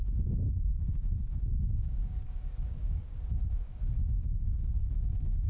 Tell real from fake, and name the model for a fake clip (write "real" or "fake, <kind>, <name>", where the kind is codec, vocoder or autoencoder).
fake, codec, DAC